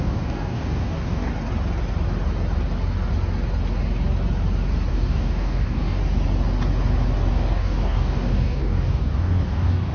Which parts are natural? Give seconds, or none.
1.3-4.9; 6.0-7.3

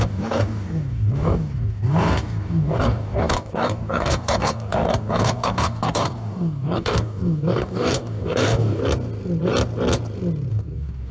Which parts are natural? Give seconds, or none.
8.8-10.5

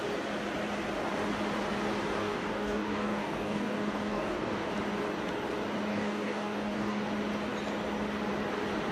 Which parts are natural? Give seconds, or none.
0.0-2.2; 4.7-5.9; 7.0-8.9

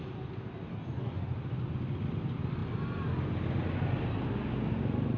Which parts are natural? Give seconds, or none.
0.0-0.7; 1.2-5.2

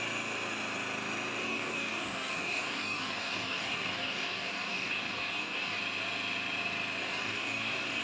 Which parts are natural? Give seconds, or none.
0.0-1.4; 5.8-7.0

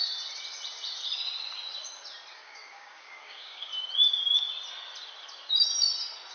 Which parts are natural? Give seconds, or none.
0.0-2.3; 3.7-6.3

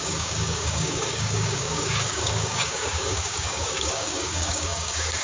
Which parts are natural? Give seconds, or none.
none

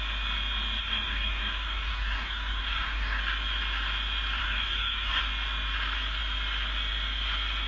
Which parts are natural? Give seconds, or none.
0.0-0.8; 3.2-4.4; 5.2-7.7